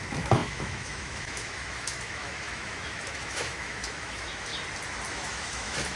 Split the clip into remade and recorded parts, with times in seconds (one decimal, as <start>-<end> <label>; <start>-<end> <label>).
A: 0.0-4.5 remade; 4.5-5.1 recorded; 5.1-6.0 remade